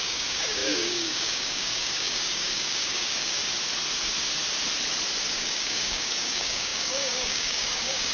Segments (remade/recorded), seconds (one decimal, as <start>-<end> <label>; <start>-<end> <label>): 0.0-3.4 remade; 3.4-5.3 recorded; 5.3-8.1 remade